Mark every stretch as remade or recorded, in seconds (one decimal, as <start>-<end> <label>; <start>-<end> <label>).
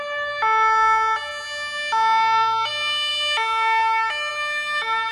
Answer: 0.0-5.1 recorded